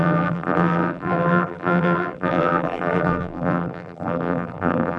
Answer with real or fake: fake